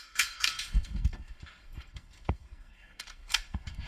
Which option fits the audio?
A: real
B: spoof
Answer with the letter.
B